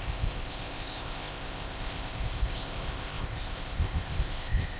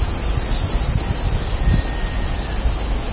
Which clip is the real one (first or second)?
second